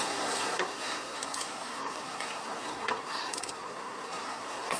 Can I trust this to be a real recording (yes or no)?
no